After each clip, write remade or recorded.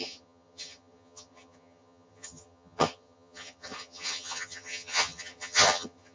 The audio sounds remade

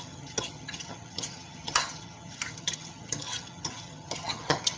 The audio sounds remade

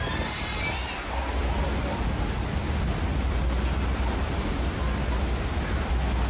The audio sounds recorded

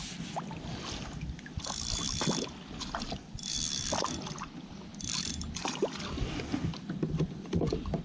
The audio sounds recorded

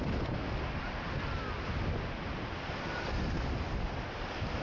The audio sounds recorded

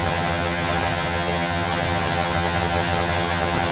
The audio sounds remade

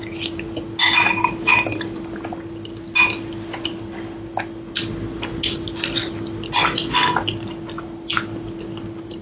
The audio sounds recorded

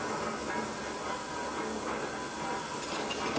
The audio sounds recorded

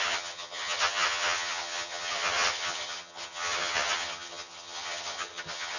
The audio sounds remade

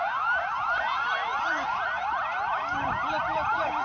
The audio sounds recorded